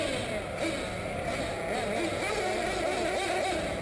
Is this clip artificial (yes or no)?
no